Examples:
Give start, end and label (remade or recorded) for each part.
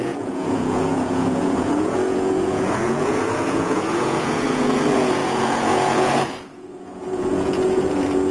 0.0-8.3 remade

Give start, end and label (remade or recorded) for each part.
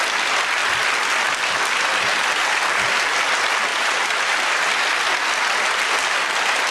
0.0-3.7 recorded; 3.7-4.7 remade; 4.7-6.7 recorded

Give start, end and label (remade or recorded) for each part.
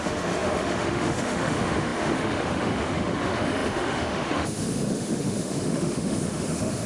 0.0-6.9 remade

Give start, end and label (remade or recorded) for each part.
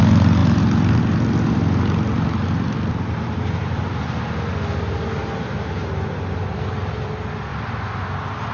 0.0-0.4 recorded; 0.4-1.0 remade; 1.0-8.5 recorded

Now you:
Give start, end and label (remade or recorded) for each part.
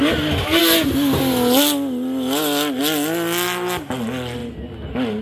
0.0-5.2 recorded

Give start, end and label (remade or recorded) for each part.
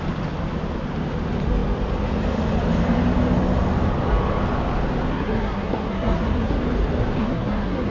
0.0-5.1 recorded; 5.1-6.6 remade; 6.6-7.2 recorded; 7.2-7.9 remade